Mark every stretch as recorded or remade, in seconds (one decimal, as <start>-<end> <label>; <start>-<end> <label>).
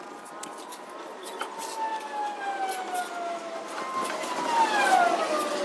0.0-5.6 recorded